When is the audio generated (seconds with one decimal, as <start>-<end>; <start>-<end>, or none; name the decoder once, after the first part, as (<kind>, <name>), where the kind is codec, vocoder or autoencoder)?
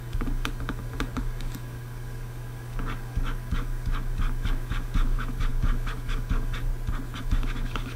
0.0-6.7 (codec, DAC); 7.2-8.0